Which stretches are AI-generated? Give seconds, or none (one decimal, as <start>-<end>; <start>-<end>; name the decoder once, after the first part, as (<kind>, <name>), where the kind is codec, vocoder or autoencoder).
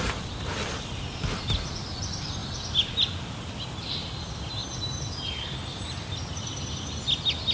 none